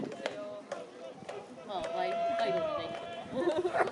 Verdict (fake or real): real